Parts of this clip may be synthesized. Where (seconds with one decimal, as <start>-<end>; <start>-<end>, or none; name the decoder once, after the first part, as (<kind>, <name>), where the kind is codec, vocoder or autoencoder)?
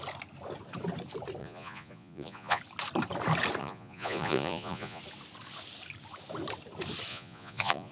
1.4-2.6 (vocoder, Vocos); 3.6-5.0; 7.1-7.9